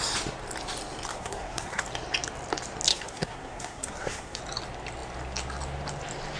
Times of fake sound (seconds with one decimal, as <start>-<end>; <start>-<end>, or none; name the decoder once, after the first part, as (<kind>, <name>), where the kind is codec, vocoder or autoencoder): 1.1-1.8 (codec, SNAC); 2.9-4.4